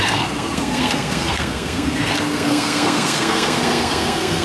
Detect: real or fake fake